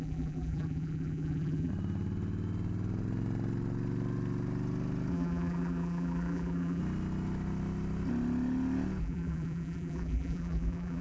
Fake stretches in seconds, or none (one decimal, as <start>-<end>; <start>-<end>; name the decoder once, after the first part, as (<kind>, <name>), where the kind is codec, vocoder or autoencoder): 0.0-1.7 (vocoder, BigVGAN v2); 5.1-6.8; 9.0-11.0